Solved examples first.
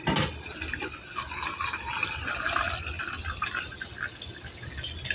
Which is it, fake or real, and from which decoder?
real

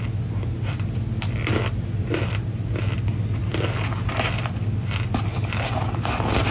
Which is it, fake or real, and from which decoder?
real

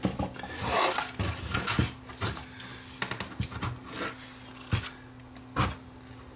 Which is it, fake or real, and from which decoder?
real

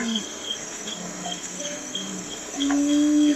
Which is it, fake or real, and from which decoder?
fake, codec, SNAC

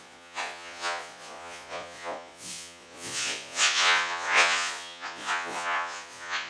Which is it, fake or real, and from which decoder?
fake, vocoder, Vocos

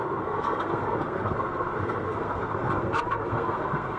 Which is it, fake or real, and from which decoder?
fake, codec, SNAC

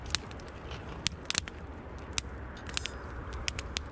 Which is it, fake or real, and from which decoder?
real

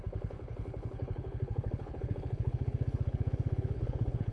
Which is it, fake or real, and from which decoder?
fake, codec, HILCodec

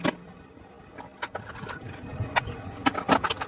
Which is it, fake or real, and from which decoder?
real